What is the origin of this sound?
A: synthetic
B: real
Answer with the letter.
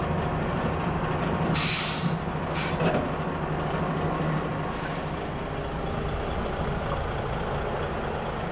B